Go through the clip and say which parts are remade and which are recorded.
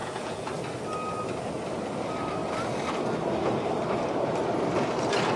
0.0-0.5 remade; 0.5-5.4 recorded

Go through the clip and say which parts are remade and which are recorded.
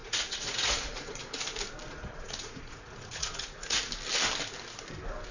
0.0-1.4 remade; 1.4-1.9 recorded; 1.9-3.8 remade; 3.8-5.3 recorded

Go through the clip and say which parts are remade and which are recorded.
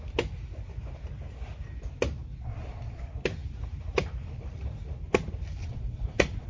0.0-2.3 recorded; 2.3-3.0 remade; 3.0-5.6 recorded; 5.6-6.5 remade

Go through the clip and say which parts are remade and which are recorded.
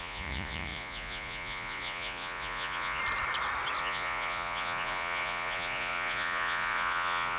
0.0-3.0 remade; 3.0-3.8 recorded; 3.8-7.4 remade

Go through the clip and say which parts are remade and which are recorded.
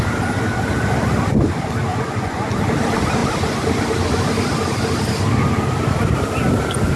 0.0-1.9 recorded; 1.9-2.5 remade; 2.5-7.0 recorded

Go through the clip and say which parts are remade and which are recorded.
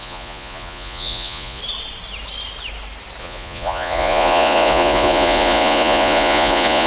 0.0-1.6 remade; 1.6-3.2 recorded; 3.2-6.9 remade